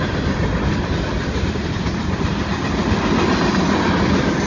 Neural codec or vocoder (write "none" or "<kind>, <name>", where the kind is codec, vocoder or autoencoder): none